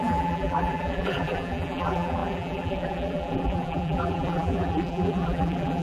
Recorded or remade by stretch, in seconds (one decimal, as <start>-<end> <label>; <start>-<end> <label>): 0.0-5.8 remade